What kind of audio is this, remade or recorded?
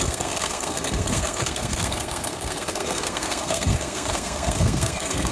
remade